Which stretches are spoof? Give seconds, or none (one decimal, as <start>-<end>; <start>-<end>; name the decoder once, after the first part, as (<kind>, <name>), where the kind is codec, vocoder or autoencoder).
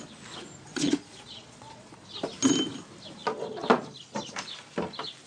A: 0.7-2.0 (vocoder, Vocos)